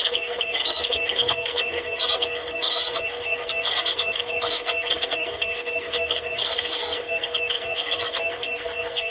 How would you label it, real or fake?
fake